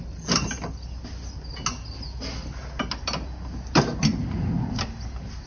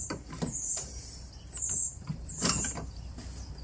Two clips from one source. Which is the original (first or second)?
first